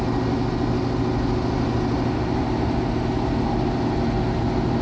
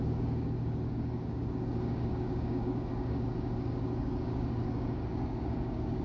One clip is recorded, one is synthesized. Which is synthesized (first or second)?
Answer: second